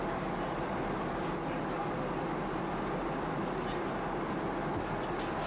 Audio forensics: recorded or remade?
recorded